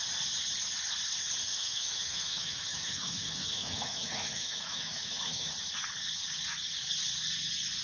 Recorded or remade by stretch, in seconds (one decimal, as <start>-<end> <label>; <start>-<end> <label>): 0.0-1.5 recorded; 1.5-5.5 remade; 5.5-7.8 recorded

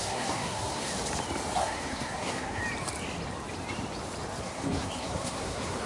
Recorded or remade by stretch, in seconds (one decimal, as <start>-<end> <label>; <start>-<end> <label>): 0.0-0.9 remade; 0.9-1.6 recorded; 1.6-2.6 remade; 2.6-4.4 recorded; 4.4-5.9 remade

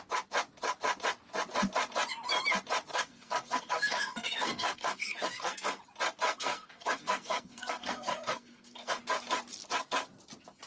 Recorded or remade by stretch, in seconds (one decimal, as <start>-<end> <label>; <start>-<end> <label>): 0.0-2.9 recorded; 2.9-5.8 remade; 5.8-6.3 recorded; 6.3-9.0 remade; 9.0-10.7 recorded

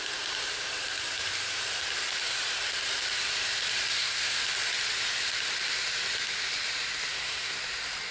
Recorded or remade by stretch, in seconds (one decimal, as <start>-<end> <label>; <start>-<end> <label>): 0.0-3.9 recorded; 3.9-4.4 remade; 4.4-7.1 recorded; 7.1-7.6 remade; 7.6-8.1 recorded

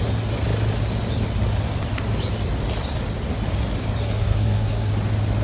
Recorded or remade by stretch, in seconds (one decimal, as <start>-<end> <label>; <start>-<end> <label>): 0.0-4.0 recorded; 4.0-4.9 remade; 4.9-5.4 recorded